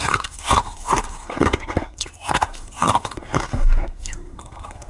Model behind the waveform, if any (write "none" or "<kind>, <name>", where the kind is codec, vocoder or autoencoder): codec, SNAC